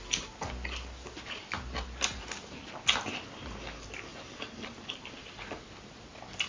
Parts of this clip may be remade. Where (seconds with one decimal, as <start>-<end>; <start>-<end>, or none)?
4.1-5.6